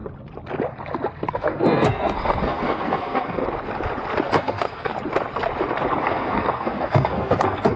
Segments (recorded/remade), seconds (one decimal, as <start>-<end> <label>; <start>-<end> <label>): 0.0-1.3 recorded; 1.3-3.4 remade; 3.4-4.3 recorded; 4.3-4.9 remade; 4.9-6.0 recorded; 6.0-7.8 remade